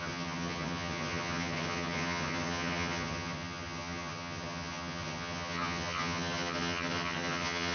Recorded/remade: remade